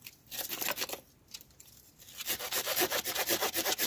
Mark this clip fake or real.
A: real